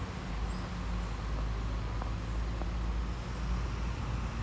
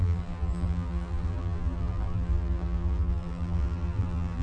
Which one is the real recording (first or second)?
first